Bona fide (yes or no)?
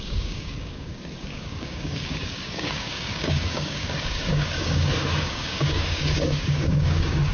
no